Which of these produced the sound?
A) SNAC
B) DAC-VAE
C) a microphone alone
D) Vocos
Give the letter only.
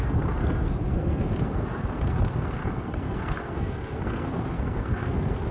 A